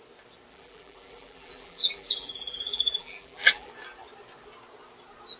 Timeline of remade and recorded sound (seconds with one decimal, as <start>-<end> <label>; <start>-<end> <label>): 0.0-0.5 recorded; 0.5-3.7 remade; 3.7-5.4 recorded